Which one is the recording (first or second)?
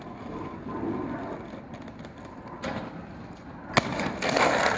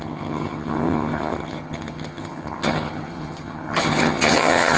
first